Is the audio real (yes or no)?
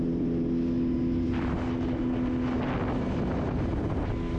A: yes